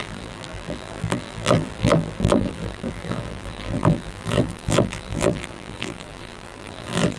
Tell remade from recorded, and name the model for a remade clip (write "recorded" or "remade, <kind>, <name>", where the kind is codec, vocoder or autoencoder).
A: remade, vocoder, BigVGAN v2